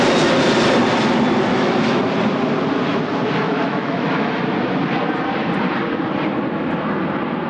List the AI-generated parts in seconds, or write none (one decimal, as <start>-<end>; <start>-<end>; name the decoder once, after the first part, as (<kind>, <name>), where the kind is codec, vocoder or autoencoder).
1.5-2.0 (autoencoder, DAC-VAE); 3.4-4.4